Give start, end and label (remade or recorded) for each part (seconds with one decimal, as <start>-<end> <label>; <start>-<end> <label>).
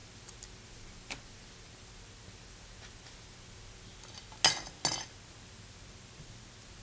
0.0-6.8 recorded